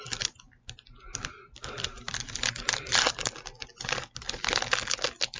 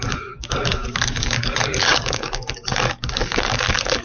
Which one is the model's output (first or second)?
second